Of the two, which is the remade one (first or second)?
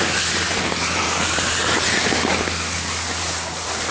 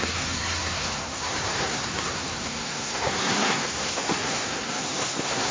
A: second